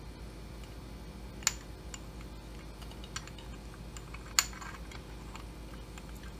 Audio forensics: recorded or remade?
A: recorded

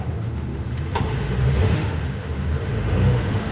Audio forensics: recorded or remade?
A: remade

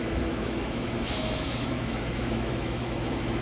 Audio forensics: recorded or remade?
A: remade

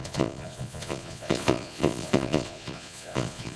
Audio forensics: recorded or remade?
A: remade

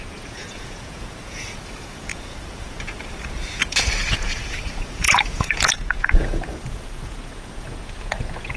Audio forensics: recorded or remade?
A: remade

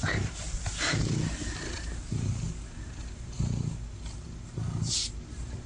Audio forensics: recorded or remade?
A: recorded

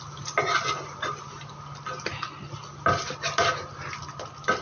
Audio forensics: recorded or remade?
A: recorded